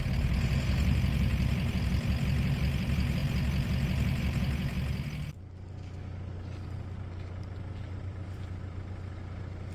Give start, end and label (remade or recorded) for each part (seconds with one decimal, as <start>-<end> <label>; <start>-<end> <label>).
0.0-9.7 recorded